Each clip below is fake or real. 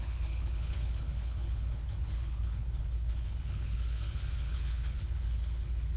fake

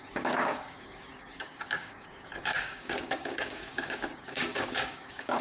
fake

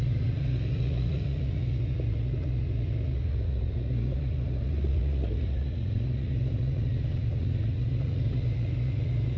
fake